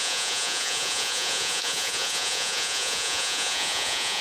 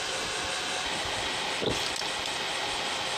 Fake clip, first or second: first